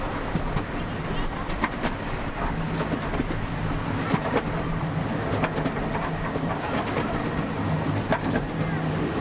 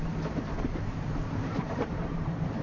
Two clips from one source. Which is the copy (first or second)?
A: second